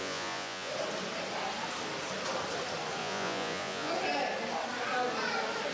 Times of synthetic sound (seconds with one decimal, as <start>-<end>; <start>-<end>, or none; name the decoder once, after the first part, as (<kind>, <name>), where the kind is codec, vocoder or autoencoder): 0.0-0.7 (vocoder, Vocos); 3.0-3.9